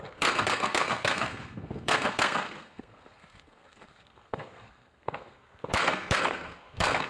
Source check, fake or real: fake